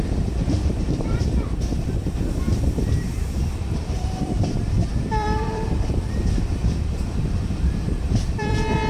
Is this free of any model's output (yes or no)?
no